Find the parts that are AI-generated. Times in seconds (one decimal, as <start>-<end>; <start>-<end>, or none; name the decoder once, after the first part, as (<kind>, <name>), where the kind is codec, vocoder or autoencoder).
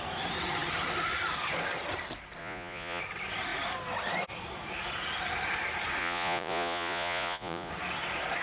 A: 2.4-3.0 (vocoder, Vocos); 6.0-7.7